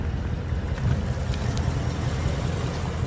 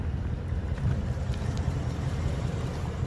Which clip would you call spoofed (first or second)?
second